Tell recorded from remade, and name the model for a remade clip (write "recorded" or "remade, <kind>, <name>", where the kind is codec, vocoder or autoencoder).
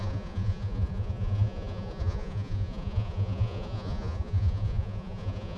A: remade, vocoder, Vocos